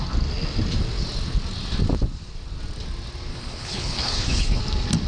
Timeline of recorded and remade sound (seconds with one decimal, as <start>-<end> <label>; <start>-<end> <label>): 0.0-3.3 recorded; 3.3-4.6 remade; 4.6-5.1 recorded